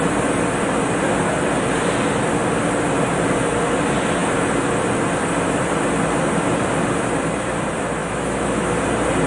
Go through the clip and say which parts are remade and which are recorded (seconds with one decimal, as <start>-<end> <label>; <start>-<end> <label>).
0.0-8.0 recorded; 8.0-8.8 remade; 8.8-9.3 recorded